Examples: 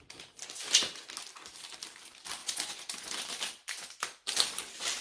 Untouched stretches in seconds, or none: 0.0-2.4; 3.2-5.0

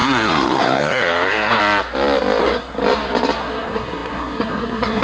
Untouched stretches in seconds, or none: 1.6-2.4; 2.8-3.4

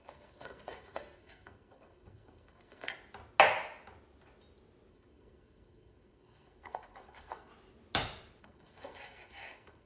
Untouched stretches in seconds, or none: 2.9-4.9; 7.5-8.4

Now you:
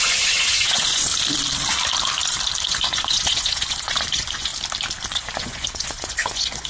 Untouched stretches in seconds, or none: 1.1-2.6; 4.5-5.1

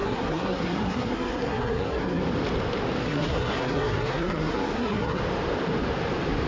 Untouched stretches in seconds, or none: 2.2-3.0; 5.2-6.5

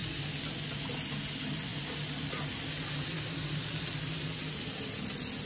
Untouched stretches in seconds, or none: 0.0-5.5

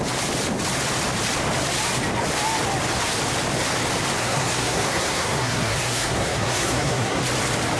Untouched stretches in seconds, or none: 0.0-4.2; 7.2-7.8

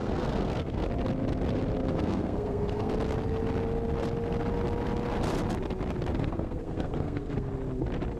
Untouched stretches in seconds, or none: 0.9-1.8; 2.9-6.1; 7.5-8.2